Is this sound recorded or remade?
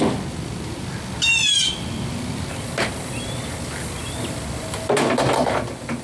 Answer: recorded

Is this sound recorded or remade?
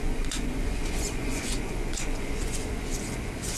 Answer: remade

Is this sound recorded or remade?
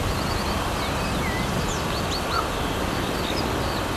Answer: recorded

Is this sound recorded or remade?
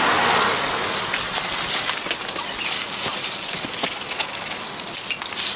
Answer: recorded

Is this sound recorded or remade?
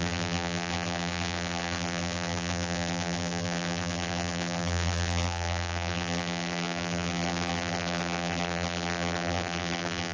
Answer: remade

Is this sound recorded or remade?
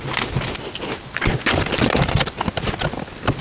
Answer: recorded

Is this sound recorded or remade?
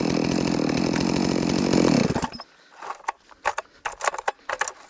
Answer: recorded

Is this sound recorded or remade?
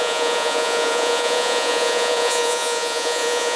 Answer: remade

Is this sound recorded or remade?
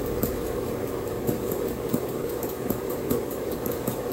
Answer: remade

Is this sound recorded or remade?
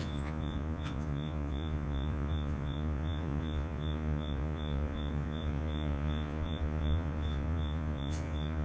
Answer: remade